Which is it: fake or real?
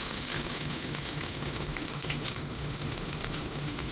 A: fake